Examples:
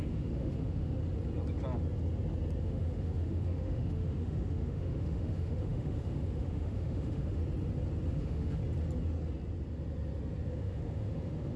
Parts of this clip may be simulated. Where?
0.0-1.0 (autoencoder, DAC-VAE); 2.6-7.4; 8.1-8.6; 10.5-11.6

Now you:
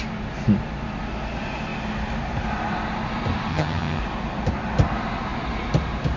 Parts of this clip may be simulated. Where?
3.5-4.0 (vocoder, HiFi-GAN)

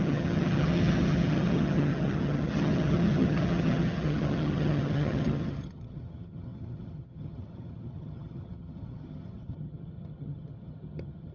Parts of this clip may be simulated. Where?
0.0-11.3 (vocoder, HiFi-GAN)

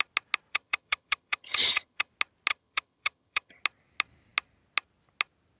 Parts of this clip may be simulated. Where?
0.5-2.1 (vocoder, HiFi-GAN); 2.5-3.6

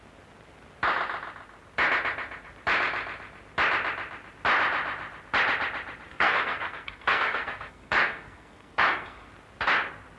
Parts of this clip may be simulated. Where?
6.1-9.3 (codec, SNAC)

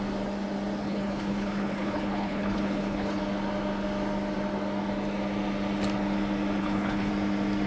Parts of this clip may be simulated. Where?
0.8-3.2 (codec, HILCodec); 6.6-7.1